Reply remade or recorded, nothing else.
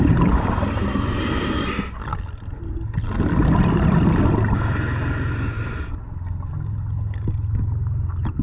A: recorded